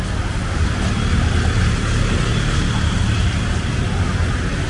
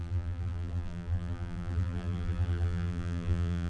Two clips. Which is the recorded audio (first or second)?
first